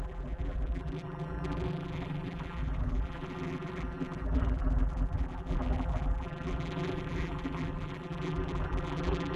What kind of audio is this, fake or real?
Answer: fake